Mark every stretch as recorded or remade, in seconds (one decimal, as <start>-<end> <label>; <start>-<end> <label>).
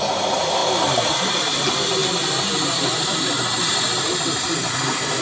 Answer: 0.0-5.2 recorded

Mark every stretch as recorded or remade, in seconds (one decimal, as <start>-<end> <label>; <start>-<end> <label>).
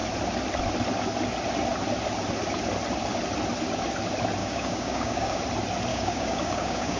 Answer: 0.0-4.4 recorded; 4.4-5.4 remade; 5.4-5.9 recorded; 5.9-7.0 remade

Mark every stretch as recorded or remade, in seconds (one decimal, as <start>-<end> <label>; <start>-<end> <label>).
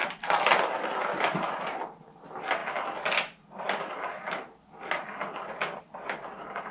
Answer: 0.0-6.7 recorded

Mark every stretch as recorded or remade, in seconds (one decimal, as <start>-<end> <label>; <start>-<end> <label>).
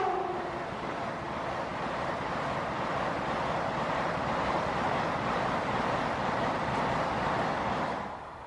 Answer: 0.0-8.5 recorded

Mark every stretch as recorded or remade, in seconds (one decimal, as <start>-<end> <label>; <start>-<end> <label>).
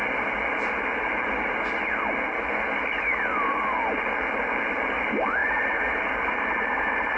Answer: 0.0-7.2 recorded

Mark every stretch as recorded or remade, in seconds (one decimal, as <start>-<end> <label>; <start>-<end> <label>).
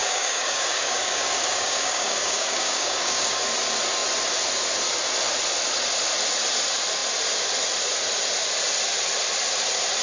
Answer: 0.0-3.4 remade; 3.4-10.0 recorded